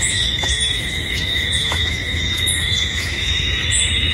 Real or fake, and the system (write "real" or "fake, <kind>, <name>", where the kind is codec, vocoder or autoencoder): fake, autoencoder, DAC-VAE